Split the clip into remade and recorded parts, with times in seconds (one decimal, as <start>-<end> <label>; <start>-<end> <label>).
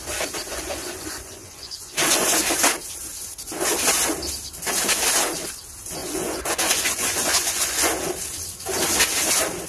0.0-0.5 recorded; 0.5-2.4 remade; 2.4-6.0 recorded; 6.0-7.9 remade; 7.9-9.7 recorded